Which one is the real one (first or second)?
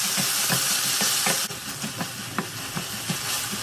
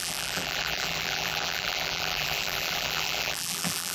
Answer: first